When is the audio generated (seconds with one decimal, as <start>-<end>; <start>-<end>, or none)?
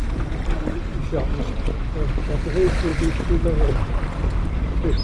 none